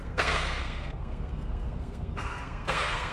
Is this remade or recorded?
remade